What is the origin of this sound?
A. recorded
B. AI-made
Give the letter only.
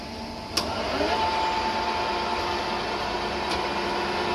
A